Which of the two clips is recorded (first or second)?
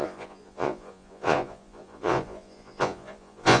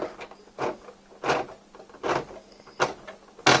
second